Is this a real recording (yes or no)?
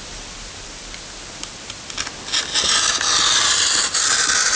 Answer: yes